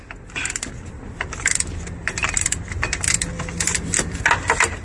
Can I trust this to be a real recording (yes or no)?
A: yes